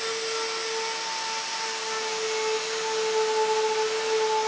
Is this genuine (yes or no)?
yes